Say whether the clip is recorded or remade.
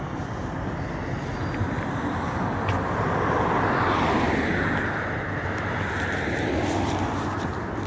recorded